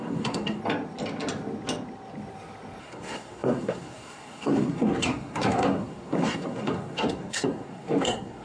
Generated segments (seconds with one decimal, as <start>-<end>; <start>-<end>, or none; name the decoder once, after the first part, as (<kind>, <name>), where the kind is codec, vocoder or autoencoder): 0.0-0.6 (codec, SNAC); 2.8-8.4